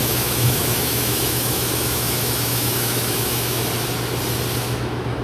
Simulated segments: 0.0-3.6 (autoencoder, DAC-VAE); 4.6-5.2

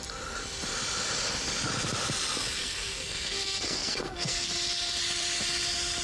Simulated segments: 2.6-4.5 (codec, SNAC)

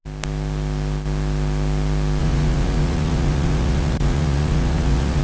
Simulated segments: 2.2-5.2 (vocoder, Vocos)

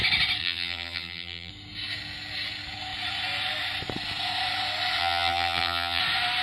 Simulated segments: 0.4-1.5 (vocoder, BigVGAN v2); 5.0-6.0

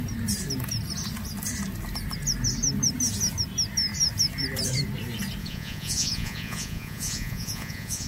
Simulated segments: 5.4-8.1 (vocoder, Vocos)

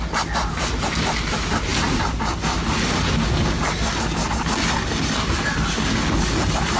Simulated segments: none